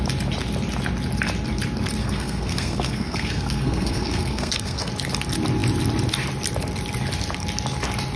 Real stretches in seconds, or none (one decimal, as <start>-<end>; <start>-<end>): 0.0-2.0; 4.9-8.2